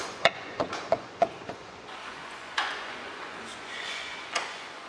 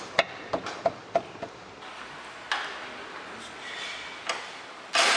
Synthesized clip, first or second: first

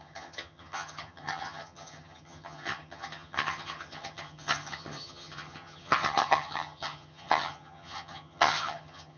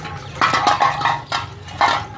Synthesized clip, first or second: first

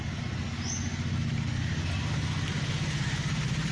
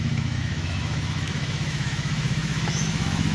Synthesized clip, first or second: second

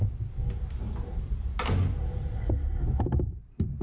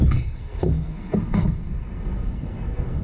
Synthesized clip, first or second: second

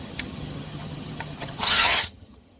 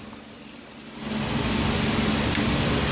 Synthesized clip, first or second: first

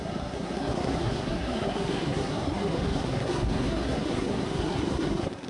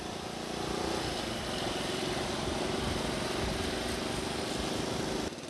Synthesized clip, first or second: first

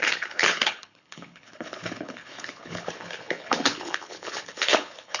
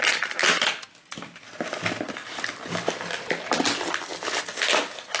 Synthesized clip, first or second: first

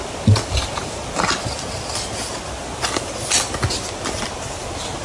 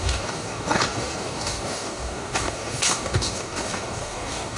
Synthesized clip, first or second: second